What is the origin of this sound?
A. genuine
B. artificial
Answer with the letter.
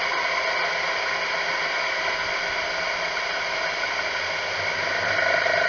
A